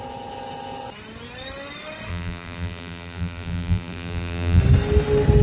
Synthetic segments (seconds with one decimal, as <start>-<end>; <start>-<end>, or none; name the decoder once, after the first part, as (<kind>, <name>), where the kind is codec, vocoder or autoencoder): 2.1-4.6 (vocoder, BigVGAN v2)